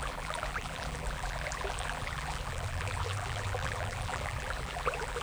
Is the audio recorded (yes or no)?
no